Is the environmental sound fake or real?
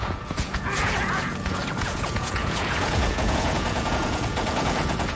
fake